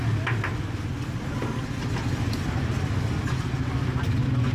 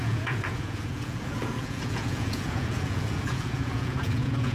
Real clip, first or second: first